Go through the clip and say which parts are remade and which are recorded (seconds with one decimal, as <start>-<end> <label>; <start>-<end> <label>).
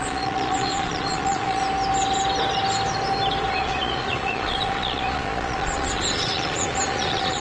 0.0-1.6 remade; 1.6-3.5 recorded; 3.5-7.4 remade